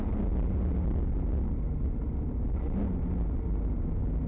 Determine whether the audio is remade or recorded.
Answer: recorded